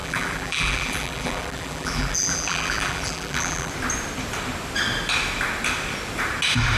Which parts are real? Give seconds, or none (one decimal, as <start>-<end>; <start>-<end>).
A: 3.7-6.8